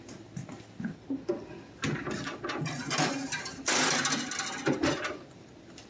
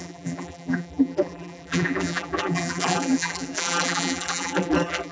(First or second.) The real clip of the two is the first